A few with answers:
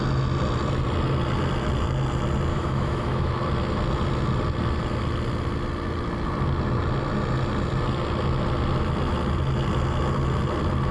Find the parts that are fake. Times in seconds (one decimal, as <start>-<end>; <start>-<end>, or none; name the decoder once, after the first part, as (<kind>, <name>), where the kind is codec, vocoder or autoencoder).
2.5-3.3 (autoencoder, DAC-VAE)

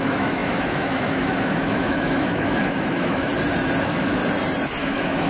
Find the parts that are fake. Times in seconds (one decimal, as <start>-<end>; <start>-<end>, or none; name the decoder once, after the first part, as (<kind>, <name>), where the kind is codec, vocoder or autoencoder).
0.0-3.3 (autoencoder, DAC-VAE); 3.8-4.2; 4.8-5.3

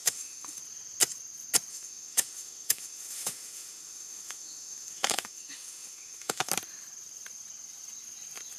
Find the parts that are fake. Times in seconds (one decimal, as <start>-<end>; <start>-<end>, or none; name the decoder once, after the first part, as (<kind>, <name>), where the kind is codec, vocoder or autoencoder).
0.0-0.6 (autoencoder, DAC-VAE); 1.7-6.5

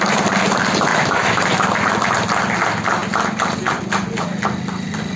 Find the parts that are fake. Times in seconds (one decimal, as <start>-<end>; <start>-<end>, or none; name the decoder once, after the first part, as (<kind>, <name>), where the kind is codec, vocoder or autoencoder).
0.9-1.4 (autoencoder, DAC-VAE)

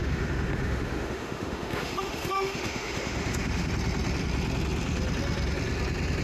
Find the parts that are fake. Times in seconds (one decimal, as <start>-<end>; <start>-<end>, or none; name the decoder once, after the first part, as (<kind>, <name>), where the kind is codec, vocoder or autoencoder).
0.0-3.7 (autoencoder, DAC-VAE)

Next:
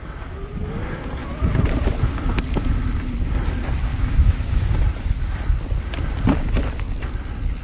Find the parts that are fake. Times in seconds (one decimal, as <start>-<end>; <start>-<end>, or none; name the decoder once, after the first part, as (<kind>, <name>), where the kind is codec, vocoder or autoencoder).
3.9-4.7 (autoencoder, DAC-VAE)

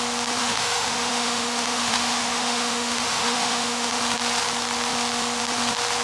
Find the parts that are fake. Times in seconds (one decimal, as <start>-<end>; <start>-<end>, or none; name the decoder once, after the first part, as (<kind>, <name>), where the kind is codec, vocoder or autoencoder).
0.4-4.0 (autoencoder, DAC-VAE)